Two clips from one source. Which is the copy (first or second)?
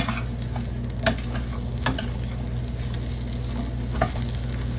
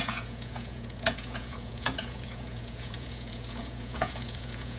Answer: second